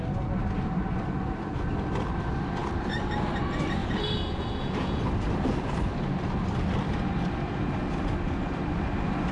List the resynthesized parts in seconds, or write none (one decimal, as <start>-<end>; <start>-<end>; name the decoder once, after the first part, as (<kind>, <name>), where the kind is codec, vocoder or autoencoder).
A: 3.8-5.0 (vocoder, Vocos)